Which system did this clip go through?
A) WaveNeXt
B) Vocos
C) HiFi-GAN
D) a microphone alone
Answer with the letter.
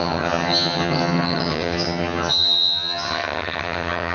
C